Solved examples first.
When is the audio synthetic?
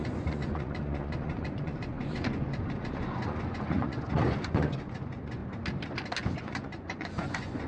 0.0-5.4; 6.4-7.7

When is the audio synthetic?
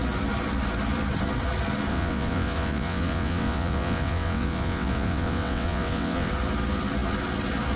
1.9-6.3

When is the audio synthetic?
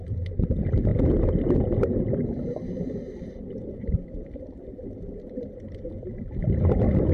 0.0-0.9; 1.6-7.1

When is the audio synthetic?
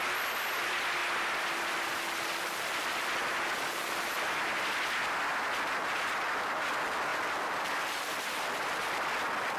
7.1-8.8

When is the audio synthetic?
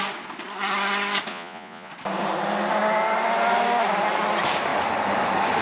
1.3-1.9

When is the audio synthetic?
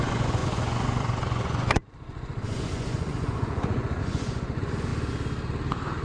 0.0-4.9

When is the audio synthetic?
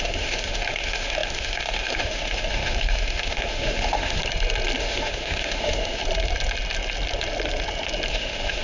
0.0-4.2; 4.8-6.0; 8.1-8.6